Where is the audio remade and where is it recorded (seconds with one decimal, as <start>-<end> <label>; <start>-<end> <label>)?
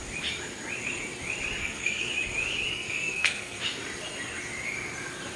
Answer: 0.0-1.6 recorded; 1.6-2.1 remade; 2.1-2.7 recorded; 2.7-3.6 remade; 3.6-5.4 recorded